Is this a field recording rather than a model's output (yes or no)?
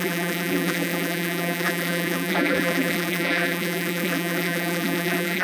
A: no